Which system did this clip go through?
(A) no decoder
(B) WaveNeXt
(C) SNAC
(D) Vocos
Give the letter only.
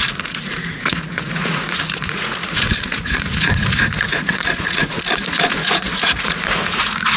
D